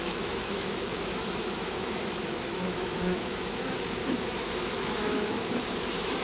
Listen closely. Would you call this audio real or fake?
fake